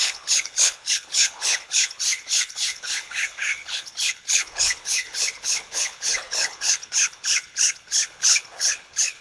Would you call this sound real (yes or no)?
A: no